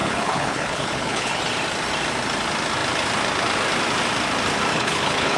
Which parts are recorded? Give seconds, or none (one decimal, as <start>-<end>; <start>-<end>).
1.4-4.7